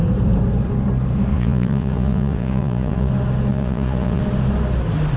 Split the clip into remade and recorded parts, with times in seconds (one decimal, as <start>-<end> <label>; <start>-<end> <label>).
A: 0.0-1.3 recorded; 1.3-3.1 remade; 3.1-3.5 recorded; 3.5-4.2 remade; 4.2-5.2 recorded

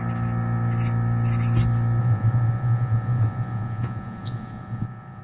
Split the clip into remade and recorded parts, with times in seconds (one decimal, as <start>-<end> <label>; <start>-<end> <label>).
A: 0.0-2.0 recorded; 2.0-5.2 remade

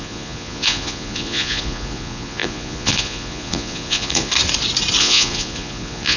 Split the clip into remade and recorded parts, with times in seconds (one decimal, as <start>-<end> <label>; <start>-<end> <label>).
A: 0.0-4.3 remade; 4.3-5.0 recorded; 5.0-6.2 remade

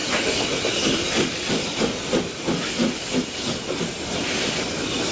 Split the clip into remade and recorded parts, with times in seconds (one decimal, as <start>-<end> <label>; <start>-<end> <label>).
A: 0.0-5.1 recorded

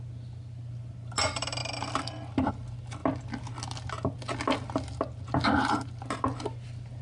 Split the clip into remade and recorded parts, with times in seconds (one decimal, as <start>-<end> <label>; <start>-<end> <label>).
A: 0.0-7.0 recorded

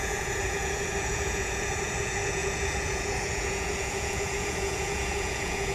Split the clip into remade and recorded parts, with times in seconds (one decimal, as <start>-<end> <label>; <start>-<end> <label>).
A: 0.0-5.7 remade

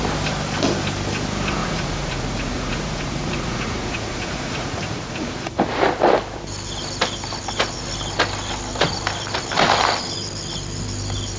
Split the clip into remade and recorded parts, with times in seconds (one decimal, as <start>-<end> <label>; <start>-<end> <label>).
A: 0.0-1.6 recorded; 1.6-5.8 remade; 5.8-11.4 recorded